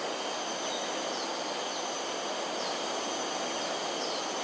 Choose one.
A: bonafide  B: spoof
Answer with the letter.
A